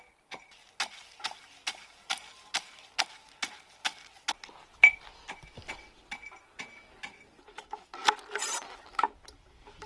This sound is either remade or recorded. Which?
recorded